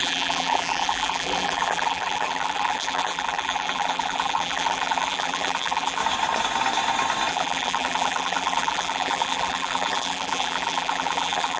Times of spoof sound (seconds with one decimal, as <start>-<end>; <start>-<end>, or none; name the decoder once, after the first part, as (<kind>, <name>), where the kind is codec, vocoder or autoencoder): 0.0-6.0 (vocoder, BigVGAN v2); 7.3-11.6

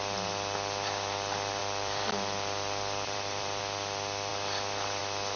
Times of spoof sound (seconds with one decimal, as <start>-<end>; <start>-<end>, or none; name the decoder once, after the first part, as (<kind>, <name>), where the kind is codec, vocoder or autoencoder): 1.6-3.6 (vocoder, BigVGAN v2)

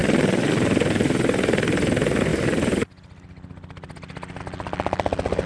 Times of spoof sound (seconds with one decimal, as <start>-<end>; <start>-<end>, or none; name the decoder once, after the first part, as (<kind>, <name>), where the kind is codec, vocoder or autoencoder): none